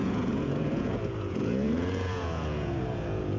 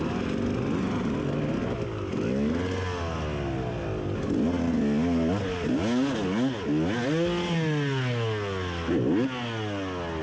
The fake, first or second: first